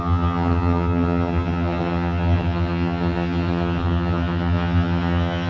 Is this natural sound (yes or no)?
no